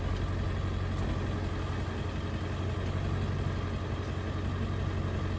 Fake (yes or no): no